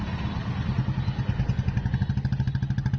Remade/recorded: recorded